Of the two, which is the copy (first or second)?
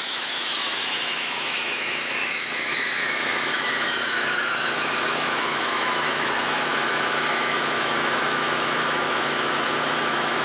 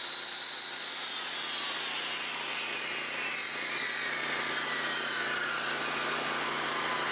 first